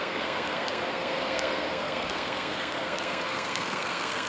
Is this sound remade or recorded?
remade